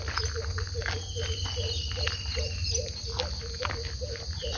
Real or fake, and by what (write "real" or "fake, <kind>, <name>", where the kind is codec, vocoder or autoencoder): real